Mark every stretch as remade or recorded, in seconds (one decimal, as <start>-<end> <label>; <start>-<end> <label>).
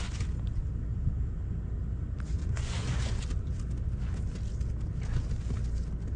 0.0-2.4 recorded; 2.4-3.2 remade; 3.2-6.2 recorded